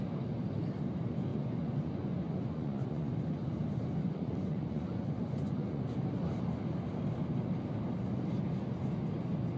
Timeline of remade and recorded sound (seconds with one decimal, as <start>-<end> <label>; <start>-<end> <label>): 0.0-1.3 recorded; 1.3-3.1 remade; 3.1-4.0 recorded; 4.0-5.8 remade; 5.8-9.6 recorded